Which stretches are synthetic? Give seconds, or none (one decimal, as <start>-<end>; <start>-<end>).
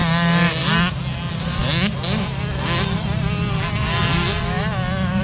none